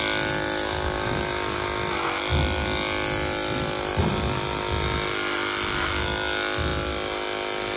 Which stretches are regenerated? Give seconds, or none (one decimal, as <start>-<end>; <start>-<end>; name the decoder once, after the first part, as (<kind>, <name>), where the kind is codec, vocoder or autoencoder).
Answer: none